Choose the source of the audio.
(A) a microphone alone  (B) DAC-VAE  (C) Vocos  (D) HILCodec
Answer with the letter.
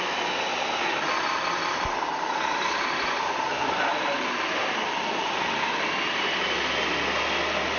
A